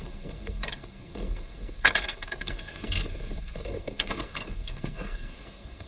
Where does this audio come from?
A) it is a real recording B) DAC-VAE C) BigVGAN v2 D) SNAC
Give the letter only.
D